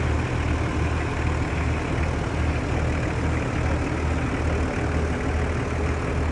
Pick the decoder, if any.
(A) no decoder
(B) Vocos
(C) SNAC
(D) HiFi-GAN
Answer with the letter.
A